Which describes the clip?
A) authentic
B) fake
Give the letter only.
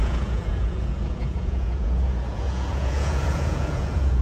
B